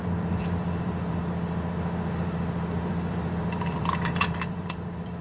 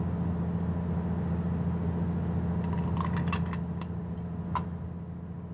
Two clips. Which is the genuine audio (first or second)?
second